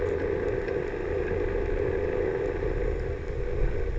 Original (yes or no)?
yes